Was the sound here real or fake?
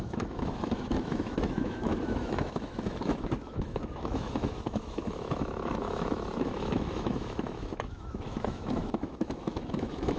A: fake